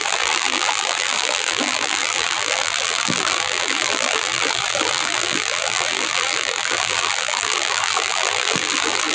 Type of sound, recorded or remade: remade